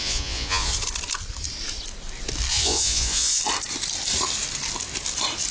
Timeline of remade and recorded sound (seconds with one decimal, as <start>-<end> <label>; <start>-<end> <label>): 0.0-0.7 remade; 0.7-2.5 recorded; 2.5-3.4 remade; 3.4-5.5 recorded